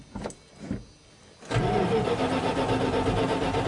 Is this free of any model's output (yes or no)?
yes